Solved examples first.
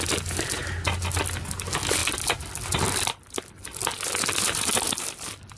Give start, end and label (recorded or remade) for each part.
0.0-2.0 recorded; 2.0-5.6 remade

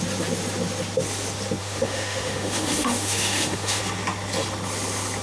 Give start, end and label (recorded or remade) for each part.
0.0-1.6 recorded; 1.6-3.8 remade; 3.8-5.2 recorded

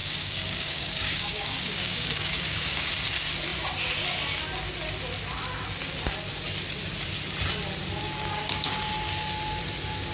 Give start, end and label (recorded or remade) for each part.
0.0-2.9 remade; 2.9-8.0 recorded; 8.0-8.9 remade; 8.9-10.1 recorded